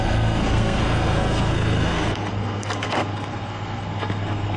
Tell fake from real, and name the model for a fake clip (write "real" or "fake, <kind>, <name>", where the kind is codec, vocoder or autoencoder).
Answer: fake, codec, SNAC